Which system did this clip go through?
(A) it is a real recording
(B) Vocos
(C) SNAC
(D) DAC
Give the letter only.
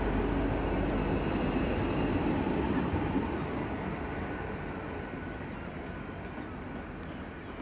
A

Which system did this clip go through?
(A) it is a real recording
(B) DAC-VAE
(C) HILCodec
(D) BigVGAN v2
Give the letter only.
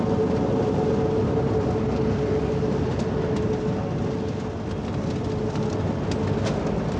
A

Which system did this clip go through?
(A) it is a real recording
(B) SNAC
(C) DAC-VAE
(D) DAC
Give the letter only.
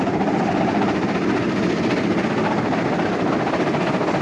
A